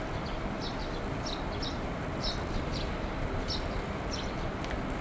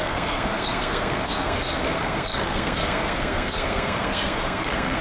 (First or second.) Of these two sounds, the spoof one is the second